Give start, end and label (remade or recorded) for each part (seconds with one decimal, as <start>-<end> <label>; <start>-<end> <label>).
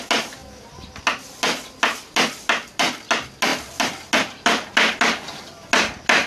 0.0-6.3 recorded